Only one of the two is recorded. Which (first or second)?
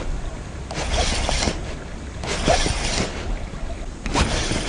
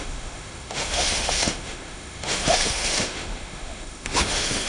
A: first